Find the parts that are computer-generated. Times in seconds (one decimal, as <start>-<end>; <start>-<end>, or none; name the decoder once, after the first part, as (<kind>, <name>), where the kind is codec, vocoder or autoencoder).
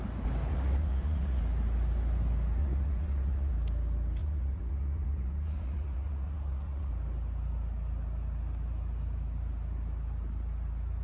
0.5-1.4 (vocoder, Vocos); 2.6-3.5; 4.2-6.9